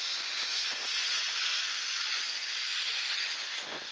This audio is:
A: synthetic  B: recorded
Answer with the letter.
A